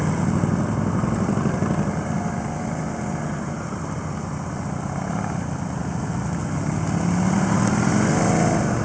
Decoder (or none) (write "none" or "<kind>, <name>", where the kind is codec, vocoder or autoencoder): none